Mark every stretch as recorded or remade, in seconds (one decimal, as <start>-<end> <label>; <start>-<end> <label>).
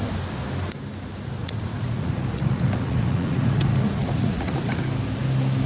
0.0-1.4 recorded; 1.4-4.8 remade; 4.8-5.7 recorded